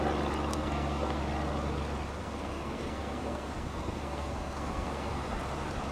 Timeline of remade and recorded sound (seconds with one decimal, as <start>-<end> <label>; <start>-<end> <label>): 0.0-0.5 recorded; 0.5-1.2 remade; 1.2-2.2 recorded; 2.2-5.4 remade; 5.4-5.9 recorded